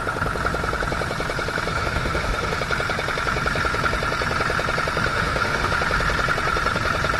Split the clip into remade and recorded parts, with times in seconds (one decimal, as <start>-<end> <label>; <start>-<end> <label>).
0.0-1.7 recorded; 1.7-2.6 remade; 2.6-5.1 recorded; 5.1-5.7 remade; 5.7-7.2 recorded